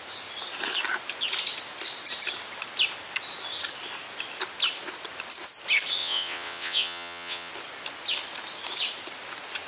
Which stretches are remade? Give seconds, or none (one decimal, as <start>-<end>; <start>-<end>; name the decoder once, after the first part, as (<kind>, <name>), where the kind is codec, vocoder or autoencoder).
6.0-7.5 (vocoder, WaveNeXt)